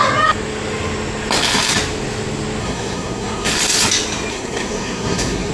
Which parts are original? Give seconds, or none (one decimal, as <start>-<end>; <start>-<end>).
0.0-2.6; 3.5-4.3